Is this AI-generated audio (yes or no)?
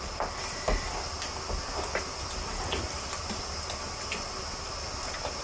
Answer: no